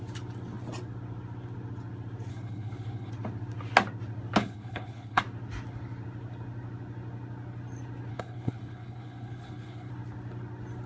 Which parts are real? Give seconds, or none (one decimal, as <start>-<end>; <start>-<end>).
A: 0.0-2.3; 3.1-4.4; 5.2-8.1; 9.9-10.9